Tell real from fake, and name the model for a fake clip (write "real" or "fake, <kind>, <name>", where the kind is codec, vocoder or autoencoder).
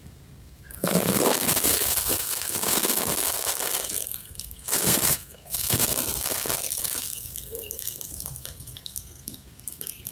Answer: fake, codec, SNAC